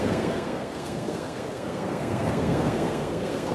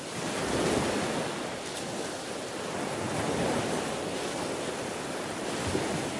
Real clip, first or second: second